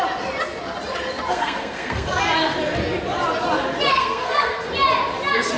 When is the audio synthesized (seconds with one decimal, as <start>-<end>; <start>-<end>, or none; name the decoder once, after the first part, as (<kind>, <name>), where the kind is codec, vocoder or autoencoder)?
1.3-2.2 (codec, SNAC); 3.9-4.7